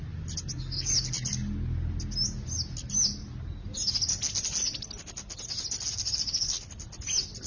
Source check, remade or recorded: recorded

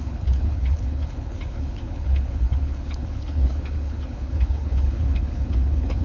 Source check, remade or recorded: remade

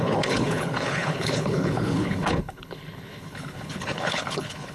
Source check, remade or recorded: remade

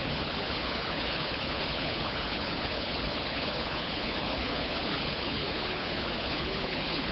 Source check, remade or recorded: remade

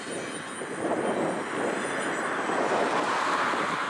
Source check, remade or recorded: recorded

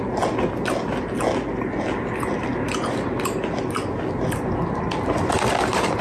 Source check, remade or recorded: recorded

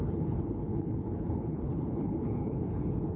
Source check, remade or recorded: remade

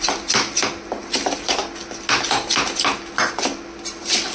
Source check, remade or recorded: recorded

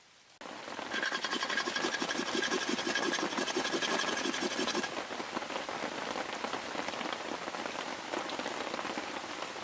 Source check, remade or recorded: recorded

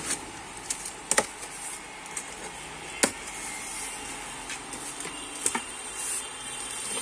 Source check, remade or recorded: recorded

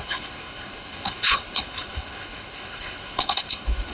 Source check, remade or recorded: remade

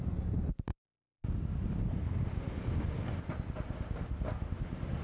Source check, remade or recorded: recorded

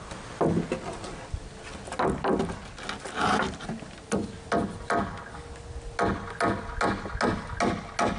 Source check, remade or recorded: recorded